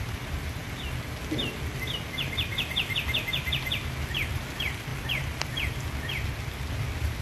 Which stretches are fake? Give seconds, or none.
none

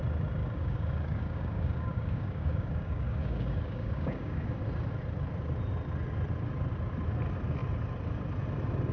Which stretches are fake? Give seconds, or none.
0.4-4.6 (codec, DAC)